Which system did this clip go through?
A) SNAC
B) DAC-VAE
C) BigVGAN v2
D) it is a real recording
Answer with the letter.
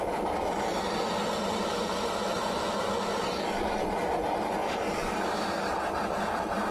D